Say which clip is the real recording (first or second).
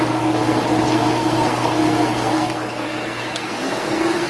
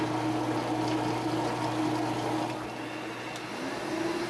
second